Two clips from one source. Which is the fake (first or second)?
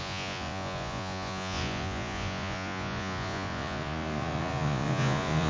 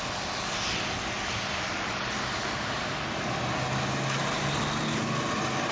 first